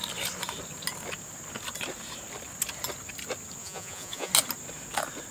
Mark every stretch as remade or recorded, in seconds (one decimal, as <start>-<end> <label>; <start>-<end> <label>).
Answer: 0.0-3.6 recorded; 3.6-4.3 remade; 4.3-5.3 recorded